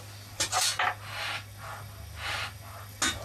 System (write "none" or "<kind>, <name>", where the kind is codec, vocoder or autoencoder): none